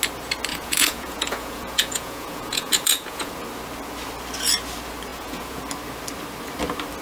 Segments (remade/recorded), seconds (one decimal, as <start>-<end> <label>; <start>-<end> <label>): 0.0-0.5 recorded; 0.5-3.3 remade; 3.3-5.1 recorded; 5.1-5.6 remade; 5.6-7.0 recorded